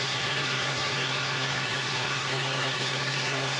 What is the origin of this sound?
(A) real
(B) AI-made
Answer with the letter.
B